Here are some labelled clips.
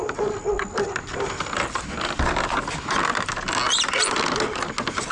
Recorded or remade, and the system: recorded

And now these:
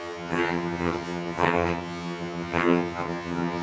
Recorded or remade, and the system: remade, vocoder, HiFi-GAN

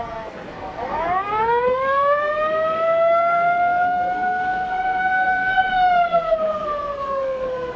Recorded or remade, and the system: remade, codec, SNAC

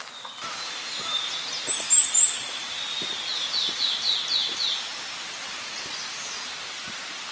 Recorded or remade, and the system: recorded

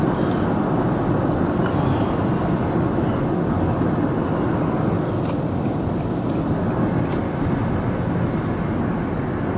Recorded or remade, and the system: recorded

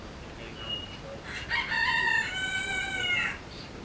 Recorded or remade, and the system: recorded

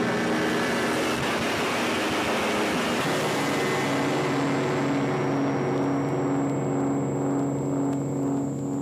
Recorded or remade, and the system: recorded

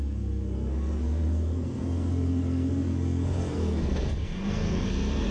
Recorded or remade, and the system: remade, codec, SNAC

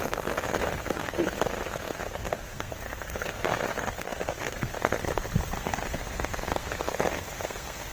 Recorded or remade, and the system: remade, codec, SNAC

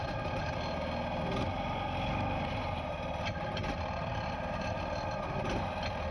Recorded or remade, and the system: recorded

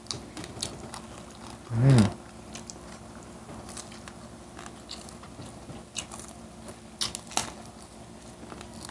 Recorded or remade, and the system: recorded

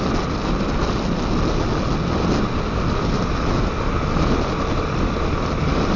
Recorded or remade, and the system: recorded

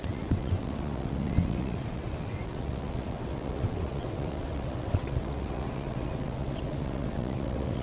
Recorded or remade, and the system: remade, vocoder, WaveNeXt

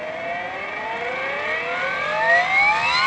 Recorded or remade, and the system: recorded